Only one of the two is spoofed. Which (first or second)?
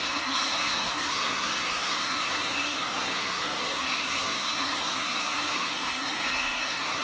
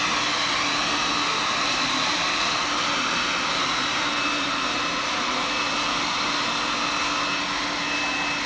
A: first